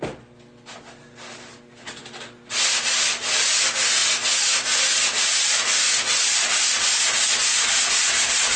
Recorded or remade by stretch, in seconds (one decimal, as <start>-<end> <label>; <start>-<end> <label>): 0.0-8.6 recorded